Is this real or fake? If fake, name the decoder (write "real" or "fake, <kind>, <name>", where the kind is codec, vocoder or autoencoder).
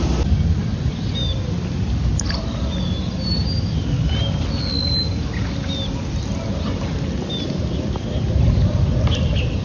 real